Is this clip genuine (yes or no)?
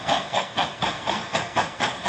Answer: no